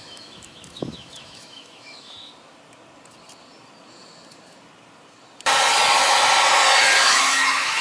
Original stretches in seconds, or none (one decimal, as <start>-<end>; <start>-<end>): 2.3-7.0